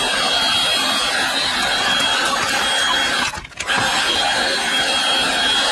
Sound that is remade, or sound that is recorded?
recorded